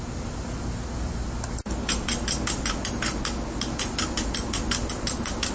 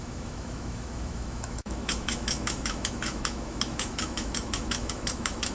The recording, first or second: first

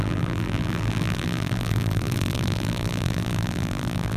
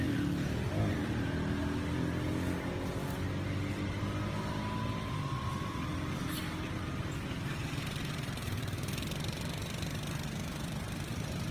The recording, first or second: second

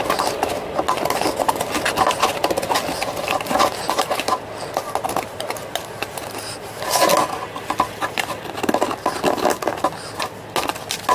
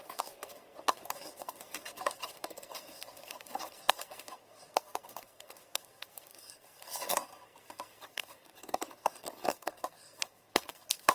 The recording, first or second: first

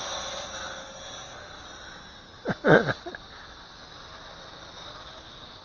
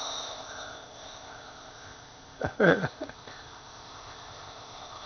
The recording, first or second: first